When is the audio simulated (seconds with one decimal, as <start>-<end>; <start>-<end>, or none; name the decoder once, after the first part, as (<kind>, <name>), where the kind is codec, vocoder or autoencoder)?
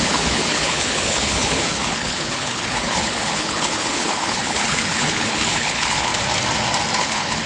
0.0-6.1 (codec, HILCodec); 7.0-7.5